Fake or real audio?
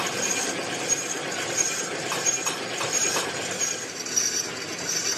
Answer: real